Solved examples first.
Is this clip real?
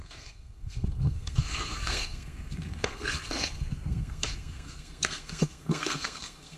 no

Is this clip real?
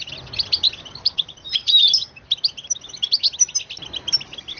yes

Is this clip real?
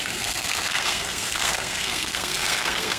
no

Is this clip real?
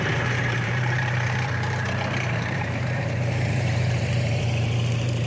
no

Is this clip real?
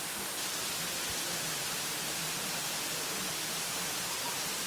yes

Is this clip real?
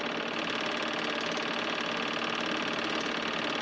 yes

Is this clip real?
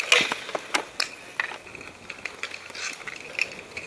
yes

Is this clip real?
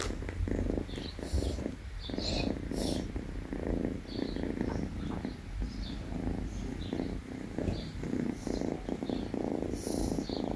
yes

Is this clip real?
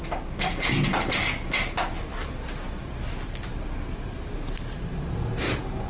yes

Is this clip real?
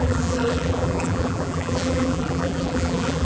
no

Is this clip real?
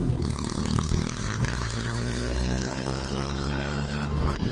no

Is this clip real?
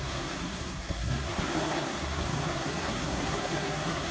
no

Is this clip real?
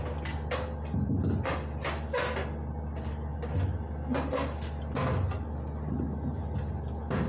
yes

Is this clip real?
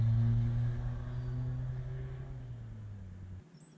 yes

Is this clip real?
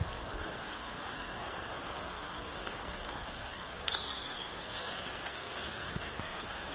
no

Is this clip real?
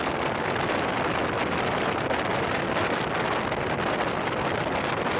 yes